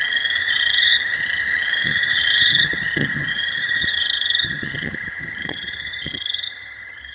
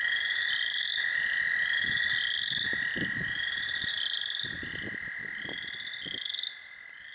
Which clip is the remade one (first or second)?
first